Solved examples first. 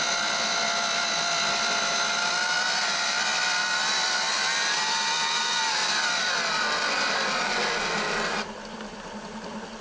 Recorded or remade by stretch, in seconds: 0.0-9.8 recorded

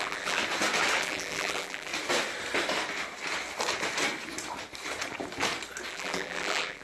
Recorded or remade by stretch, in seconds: 0.0-0.4 remade; 0.4-1.0 recorded; 1.0-1.9 remade; 1.9-5.9 recorded; 5.9-6.8 remade

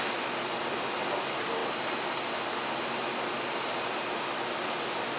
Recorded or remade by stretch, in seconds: 0.0-5.2 recorded

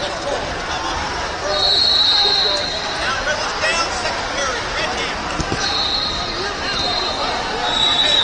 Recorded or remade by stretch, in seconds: 0.0-7.6 recorded; 7.6-8.2 remade

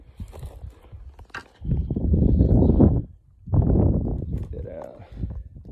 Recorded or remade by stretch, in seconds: 0.0-4.1 recorded; 4.1-5.0 remade; 5.0-5.7 recorded

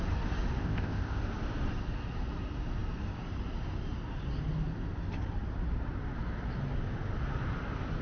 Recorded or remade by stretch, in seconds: 0.0-0.6 recorded; 0.6-1.2 remade; 1.2-8.0 recorded

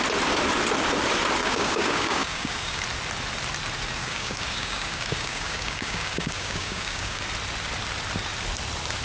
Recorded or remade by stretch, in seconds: 0.0-1.4 recorded; 1.4-2.8 remade; 2.8-4.0 recorded; 4.0-7.2 remade; 7.2-9.0 recorded

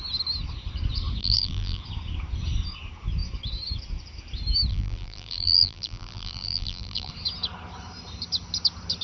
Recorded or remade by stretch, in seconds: 0.0-1.2 recorded; 1.2-1.8 remade; 1.8-4.7 recorded; 4.7-7.1 remade; 7.1-9.0 recorded